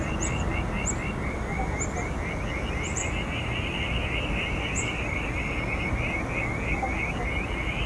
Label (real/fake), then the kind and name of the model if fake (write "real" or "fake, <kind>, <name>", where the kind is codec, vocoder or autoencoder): real